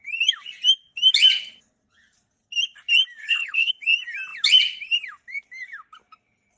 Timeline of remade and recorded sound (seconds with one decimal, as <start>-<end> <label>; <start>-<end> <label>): 0.0-3.2 recorded; 3.2-3.7 remade; 3.7-6.6 recorded